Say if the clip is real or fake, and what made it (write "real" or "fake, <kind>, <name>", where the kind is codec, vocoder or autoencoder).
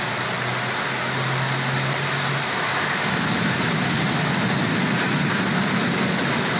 real